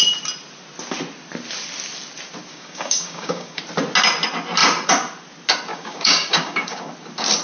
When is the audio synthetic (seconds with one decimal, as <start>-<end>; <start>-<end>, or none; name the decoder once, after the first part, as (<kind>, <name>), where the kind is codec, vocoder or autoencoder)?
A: 2.5-3.6 (codec, DAC); 5.7-6.9